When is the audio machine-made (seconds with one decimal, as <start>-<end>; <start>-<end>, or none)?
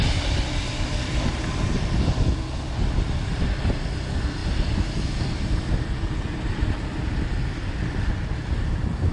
none